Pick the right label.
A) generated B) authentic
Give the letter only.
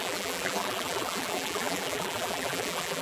A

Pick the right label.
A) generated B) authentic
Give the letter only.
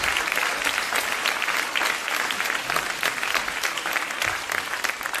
B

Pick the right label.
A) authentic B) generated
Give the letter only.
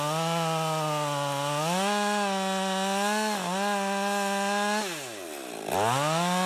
A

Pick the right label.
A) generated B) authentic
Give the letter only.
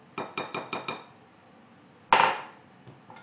B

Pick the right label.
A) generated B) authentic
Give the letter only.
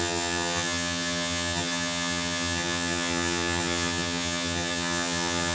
A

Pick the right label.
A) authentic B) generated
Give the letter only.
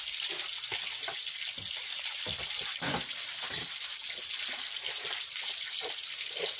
A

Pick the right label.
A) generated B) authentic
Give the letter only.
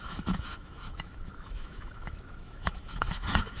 A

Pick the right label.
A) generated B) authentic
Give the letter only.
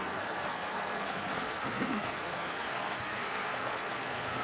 A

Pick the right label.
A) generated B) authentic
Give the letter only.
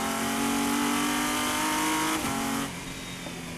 B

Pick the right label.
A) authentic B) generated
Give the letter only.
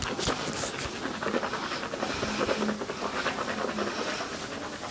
A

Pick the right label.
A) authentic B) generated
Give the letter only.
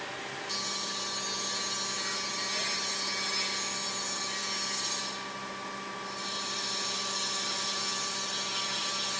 A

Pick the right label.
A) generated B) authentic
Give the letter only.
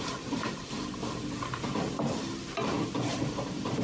A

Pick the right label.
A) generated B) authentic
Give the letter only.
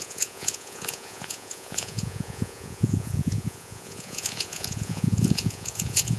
A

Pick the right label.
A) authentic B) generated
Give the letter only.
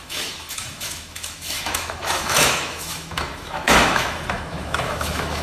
B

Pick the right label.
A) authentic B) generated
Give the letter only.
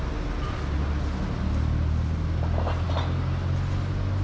A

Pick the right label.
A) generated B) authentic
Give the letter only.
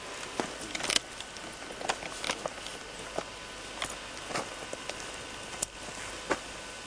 B